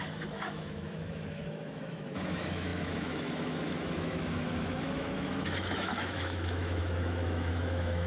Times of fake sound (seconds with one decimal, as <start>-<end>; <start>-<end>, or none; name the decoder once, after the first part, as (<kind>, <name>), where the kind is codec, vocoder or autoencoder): 0.0-8.1 (autoencoder, DAC-VAE)